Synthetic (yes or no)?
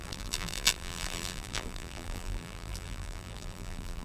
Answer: yes